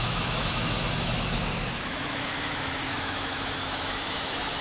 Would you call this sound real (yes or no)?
no